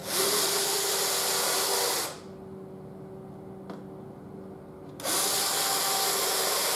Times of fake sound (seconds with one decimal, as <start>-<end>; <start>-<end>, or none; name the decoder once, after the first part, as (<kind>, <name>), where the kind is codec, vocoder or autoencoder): none